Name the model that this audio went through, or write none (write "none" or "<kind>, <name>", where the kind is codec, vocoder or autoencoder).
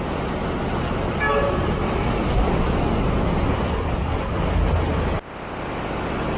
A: none